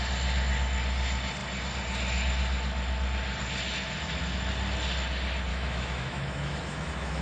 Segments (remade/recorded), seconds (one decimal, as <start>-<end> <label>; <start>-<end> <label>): 0.0-5.5 recorded; 5.5-7.2 remade